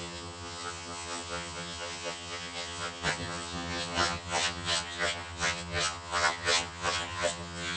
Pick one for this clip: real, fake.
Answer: fake